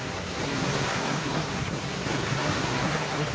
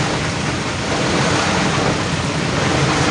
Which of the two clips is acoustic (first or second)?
second